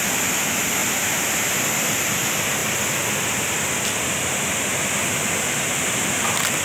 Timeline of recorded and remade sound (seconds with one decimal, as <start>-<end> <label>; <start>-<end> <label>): 0.0-0.8 recorded; 0.8-1.6 remade; 1.6-6.6 recorded